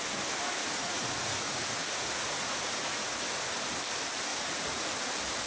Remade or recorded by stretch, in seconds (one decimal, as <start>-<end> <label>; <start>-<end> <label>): 0.0-0.6 recorded; 0.6-3.3 remade; 3.3-4.3 recorded; 4.3-5.1 remade; 5.1-5.5 recorded